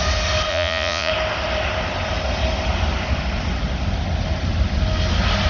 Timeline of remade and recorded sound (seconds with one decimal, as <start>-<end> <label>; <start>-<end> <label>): 0.0-0.5 recorded; 0.5-1.1 remade; 1.1-5.5 recorded